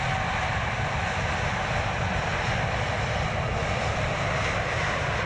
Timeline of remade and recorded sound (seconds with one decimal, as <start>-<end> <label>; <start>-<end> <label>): 0.0-5.3 remade